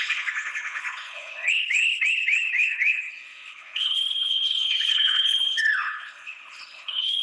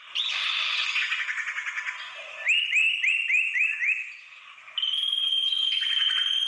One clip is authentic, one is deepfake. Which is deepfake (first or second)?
first